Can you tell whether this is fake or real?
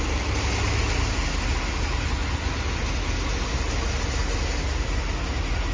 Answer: real